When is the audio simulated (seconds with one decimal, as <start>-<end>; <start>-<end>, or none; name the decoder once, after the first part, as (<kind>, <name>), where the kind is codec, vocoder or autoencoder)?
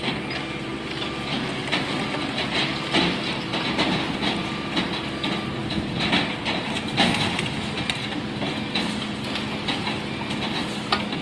3.5-4.8 (vocoder, BigVGAN v2); 5.6-9.7